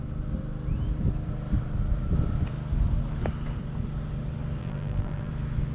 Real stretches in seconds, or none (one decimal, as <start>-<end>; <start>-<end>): 0.0-4.6; 5.3-5.7

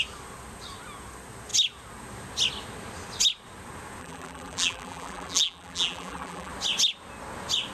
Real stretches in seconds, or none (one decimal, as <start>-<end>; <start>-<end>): 0.0-4.0; 6.5-7.7

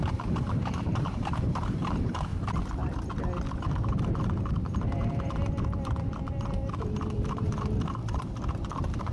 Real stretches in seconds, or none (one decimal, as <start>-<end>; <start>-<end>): 2.3-4.4

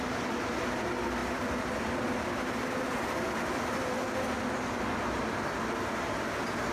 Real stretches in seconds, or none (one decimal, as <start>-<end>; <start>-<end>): 0.0-6.7

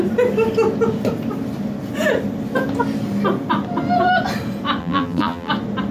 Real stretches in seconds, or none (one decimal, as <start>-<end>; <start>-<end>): 0.0-4.8; 5.5-5.9